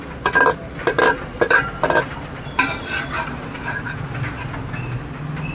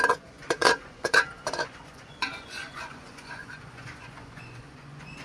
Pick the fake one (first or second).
second